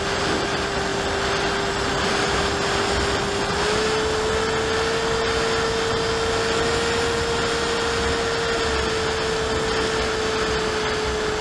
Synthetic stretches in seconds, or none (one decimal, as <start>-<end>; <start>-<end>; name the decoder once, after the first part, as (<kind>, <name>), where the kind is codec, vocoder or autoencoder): none